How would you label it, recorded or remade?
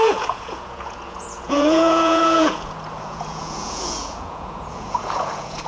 remade